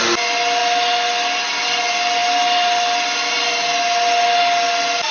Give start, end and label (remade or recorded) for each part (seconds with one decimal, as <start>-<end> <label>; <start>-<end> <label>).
0.0-5.1 recorded